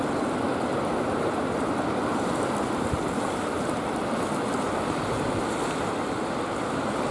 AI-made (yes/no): yes